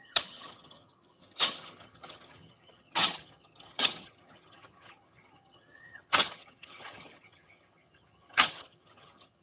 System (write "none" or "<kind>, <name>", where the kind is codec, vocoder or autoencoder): vocoder, HiFi-GAN